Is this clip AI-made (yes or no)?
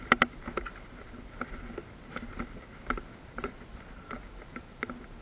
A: no